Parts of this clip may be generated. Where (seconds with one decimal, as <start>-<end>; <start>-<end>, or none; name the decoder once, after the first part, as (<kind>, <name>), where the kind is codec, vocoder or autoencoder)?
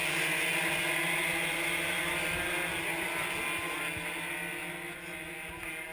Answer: none